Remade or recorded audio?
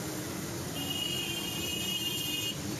recorded